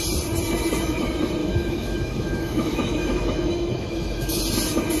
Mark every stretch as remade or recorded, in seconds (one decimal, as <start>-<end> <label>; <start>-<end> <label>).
0.0-1.4 recorded; 1.4-4.4 remade; 4.4-5.0 recorded